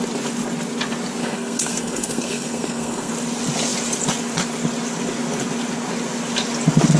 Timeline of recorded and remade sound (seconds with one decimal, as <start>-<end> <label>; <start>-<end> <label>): 0.0-1.2 recorded; 1.2-3.1 remade; 3.1-7.0 recorded